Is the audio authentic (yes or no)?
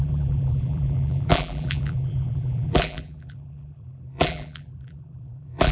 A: no